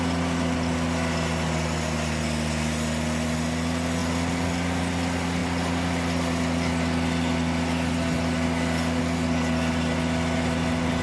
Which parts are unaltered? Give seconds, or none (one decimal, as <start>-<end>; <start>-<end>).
0.0-11.0